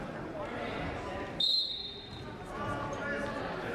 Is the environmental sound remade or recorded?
recorded